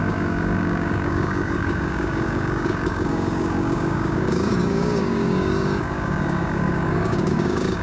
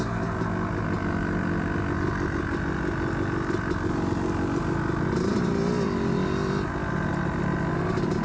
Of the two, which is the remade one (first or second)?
first